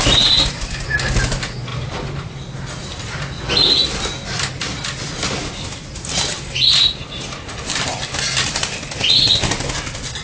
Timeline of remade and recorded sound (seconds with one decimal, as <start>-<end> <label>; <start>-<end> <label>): 0.0-1.7 recorded; 1.7-2.3 remade; 2.3-10.2 recorded